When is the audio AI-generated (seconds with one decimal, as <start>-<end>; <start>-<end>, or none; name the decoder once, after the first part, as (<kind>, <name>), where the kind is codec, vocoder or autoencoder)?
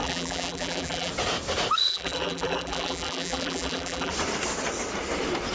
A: 0.0-1.1 (vocoder, BigVGAN v2); 1.9-4.1